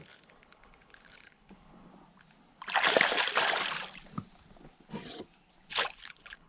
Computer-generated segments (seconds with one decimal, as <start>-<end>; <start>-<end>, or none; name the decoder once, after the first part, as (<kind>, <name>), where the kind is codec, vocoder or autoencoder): 0.0-1.9 (codec, HILCodec); 5.7-6.5